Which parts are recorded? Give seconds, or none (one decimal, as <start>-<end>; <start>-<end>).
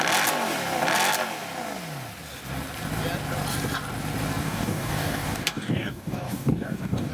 0.0-4.4